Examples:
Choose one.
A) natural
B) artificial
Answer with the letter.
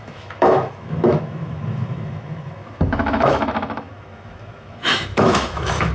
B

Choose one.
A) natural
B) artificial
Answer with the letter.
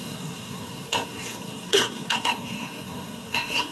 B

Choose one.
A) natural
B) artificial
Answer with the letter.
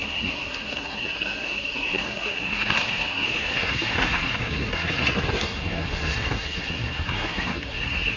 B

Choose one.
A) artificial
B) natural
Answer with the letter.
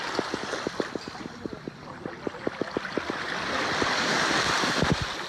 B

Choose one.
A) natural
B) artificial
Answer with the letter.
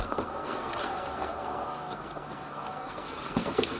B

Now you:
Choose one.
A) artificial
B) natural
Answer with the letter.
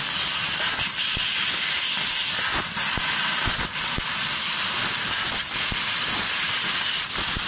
B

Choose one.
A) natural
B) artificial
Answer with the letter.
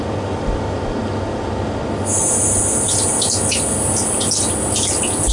A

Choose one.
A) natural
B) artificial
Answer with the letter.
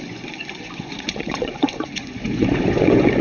B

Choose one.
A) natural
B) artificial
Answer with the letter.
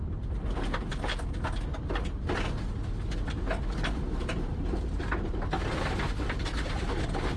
A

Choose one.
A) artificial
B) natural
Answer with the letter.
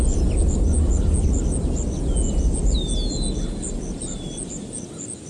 B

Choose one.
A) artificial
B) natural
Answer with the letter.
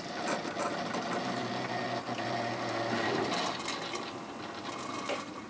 B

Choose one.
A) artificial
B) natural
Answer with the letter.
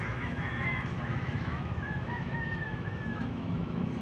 A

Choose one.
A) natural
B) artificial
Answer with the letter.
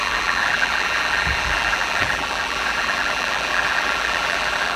B